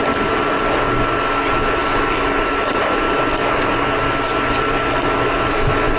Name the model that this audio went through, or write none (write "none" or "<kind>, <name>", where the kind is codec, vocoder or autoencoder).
none